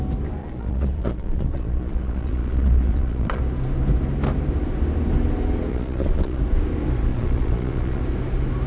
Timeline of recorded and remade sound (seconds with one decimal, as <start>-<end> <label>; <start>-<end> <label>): 0.0-0.4 recorded; 0.4-3.4 remade; 3.4-5.7 recorded; 5.7-6.4 remade; 6.4-7.1 recorded; 7.1-8.0 remade; 8.0-8.7 recorded